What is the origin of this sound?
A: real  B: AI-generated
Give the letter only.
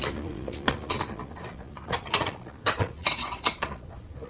B